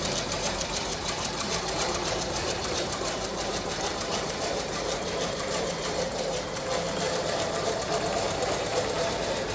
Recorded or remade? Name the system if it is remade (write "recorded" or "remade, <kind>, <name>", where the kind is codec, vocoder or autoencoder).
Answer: remade, vocoder, BigVGAN v2